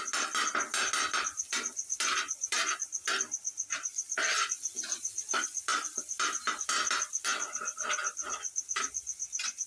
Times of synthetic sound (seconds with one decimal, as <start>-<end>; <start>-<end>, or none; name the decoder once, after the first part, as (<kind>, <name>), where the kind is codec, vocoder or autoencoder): 4.0-5.1 (vocoder, BigVGAN v2); 5.7-6.3